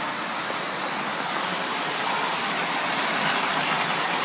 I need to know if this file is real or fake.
real